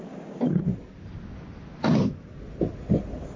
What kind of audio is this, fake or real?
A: real